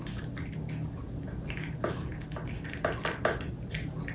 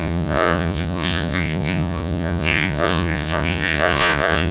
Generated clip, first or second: second